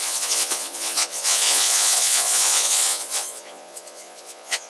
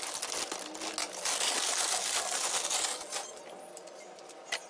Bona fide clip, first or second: second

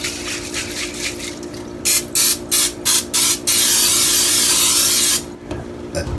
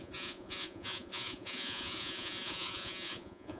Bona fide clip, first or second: first